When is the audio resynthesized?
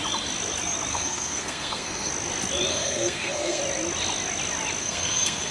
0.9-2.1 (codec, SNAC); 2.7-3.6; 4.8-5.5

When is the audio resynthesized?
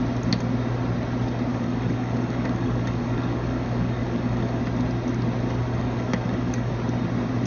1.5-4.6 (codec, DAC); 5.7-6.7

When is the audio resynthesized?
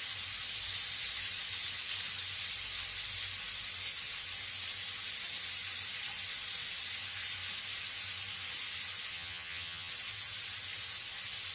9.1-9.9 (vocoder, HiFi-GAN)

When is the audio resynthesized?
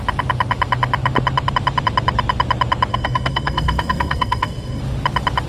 2.9-4.8 (codec, SNAC)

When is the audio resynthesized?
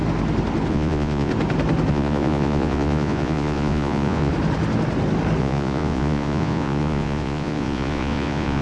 0.7-1.3 (vocoder, Vocos); 1.9-4.3; 5.4-8.6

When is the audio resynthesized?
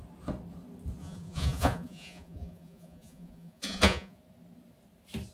1.0-4.2 (vocoder, Vocos)